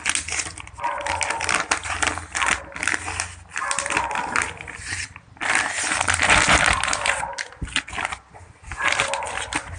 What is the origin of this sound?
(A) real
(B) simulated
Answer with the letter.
A